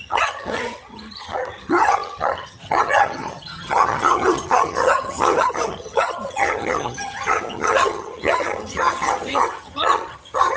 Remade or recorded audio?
remade